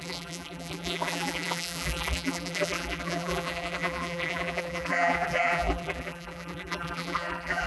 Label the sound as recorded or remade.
remade